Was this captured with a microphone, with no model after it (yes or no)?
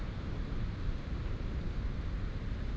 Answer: yes